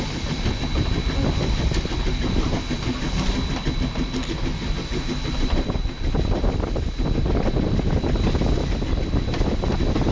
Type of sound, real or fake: real